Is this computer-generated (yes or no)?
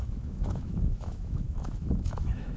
yes